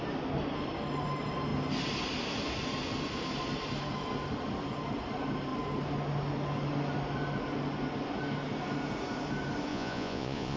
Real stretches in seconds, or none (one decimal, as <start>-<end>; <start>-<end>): 0.0-9.7